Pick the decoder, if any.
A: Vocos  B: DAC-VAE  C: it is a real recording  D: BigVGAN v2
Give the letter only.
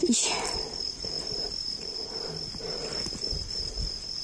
C